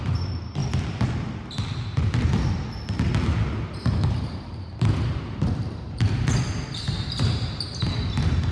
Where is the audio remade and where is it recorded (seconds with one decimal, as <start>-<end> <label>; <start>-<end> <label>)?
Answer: 0.0-0.6 remade; 0.6-4.1 recorded; 4.1-8.5 remade